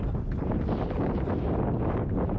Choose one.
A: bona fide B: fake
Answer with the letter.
A